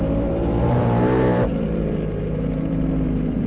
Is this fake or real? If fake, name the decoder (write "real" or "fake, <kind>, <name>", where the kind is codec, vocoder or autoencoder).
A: fake, vocoder, BigVGAN v2